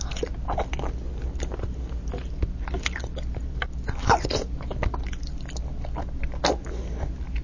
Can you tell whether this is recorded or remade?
recorded